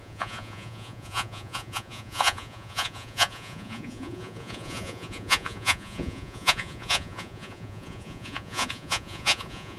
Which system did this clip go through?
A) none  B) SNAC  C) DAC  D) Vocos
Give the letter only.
D